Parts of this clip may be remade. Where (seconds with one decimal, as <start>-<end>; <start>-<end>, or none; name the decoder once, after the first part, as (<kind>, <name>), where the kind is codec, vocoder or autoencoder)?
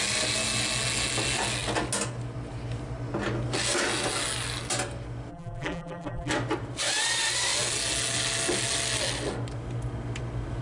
5.3-6.3 (vocoder, BigVGAN v2)